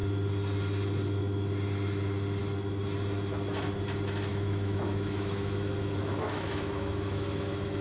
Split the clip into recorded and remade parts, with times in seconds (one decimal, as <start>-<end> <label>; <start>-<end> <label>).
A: 0.0-4.3 recorded; 4.3-7.8 remade